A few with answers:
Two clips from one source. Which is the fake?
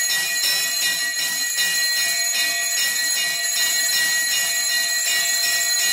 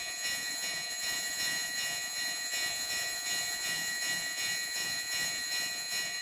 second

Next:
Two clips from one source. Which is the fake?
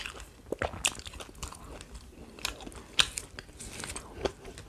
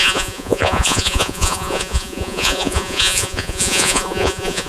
second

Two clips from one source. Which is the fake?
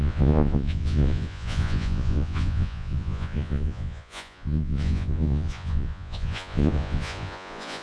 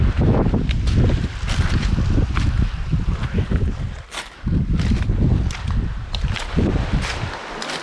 first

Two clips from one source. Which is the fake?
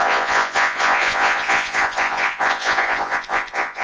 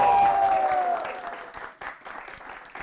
first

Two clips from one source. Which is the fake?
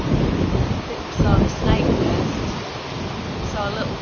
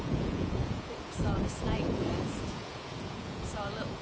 second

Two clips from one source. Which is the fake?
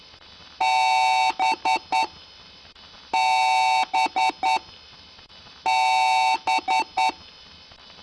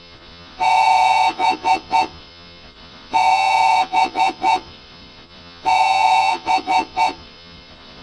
second